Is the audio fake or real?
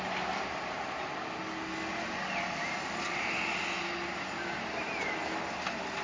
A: real